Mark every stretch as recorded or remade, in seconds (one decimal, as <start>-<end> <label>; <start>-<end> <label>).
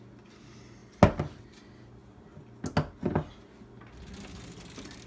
0.0-5.1 recorded